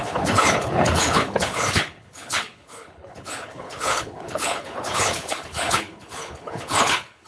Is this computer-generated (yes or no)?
yes